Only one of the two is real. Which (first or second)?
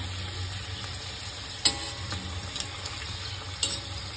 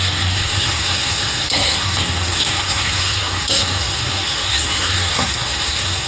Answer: first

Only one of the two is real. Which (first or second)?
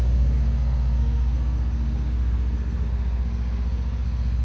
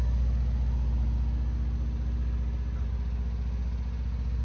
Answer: second